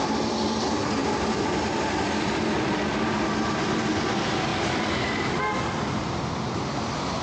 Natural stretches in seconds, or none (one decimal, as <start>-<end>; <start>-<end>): 0.0-1.0; 3.2-4.5; 6.5-7.2